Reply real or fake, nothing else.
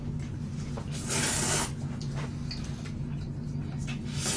real